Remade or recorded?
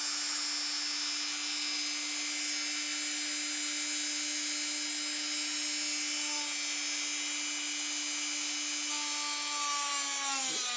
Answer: recorded